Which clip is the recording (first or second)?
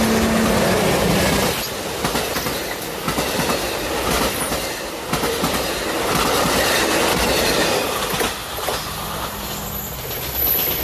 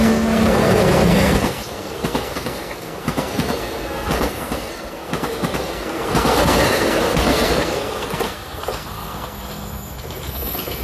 first